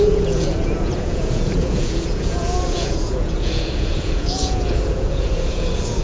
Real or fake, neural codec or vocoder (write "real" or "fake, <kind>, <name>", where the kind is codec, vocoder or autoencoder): fake, vocoder, Vocos